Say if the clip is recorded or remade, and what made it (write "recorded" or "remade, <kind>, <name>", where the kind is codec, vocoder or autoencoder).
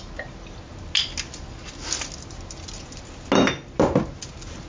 recorded